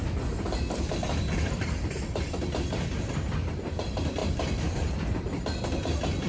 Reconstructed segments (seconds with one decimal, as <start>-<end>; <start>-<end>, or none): 0.0-6.3